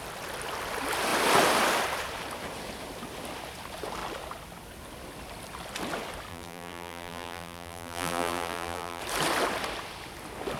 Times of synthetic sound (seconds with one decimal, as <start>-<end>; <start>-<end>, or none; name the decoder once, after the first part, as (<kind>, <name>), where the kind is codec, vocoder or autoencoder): 6.3-9.0 (vocoder, BigVGAN v2)